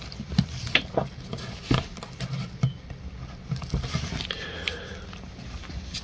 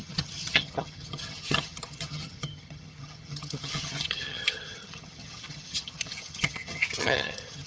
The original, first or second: first